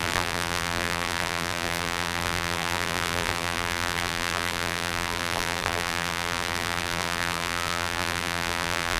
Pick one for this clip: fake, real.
fake